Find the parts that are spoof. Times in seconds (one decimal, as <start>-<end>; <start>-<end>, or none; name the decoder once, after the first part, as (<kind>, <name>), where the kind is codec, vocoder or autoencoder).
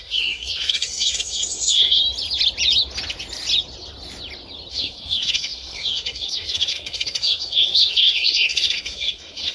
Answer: 0.0-2.0 (codec, SNAC); 4.7-9.5